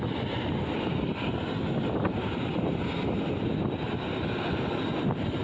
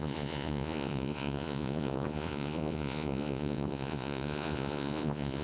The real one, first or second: first